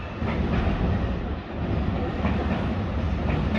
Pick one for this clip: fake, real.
real